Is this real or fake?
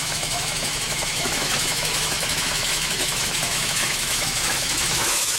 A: fake